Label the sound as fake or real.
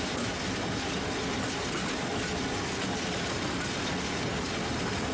real